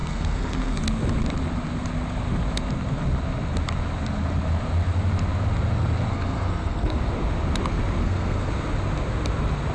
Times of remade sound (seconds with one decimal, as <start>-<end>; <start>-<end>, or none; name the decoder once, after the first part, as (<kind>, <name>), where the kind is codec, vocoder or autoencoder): 0.0-0.8 (codec, SNAC); 6.1-7.0; 8.0-8.5